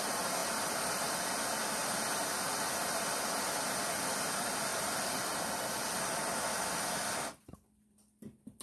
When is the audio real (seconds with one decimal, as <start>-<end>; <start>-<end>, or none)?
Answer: 0.0-8.6